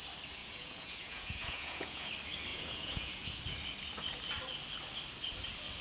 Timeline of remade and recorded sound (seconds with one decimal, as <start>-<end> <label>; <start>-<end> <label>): 0.0-0.4 recorded; 0.4-2.1 remade; 2.1-2.5 recorded; 2.5-3.4 remade; 3.4-5.8 recorded